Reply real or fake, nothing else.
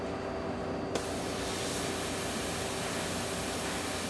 real